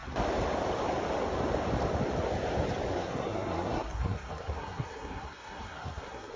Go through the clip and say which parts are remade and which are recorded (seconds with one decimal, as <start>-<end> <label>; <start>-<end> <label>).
0.0-2.9 recorded; 2.9-6.4 remade